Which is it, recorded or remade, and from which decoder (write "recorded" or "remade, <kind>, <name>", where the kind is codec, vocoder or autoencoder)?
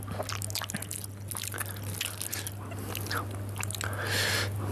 recorded